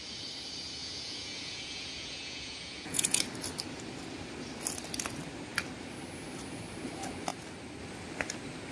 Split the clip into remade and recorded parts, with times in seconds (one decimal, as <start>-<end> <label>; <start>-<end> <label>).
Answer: 0.0-0.8 recorded; 0.8-3.2 remade; 3.2-8.7 recorded